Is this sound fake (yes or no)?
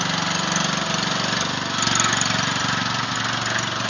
no